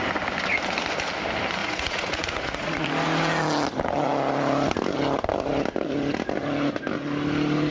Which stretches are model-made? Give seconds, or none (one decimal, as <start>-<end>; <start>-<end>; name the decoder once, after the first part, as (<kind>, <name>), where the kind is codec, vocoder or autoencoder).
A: 1.6-2.9 (vocoder, Vocos)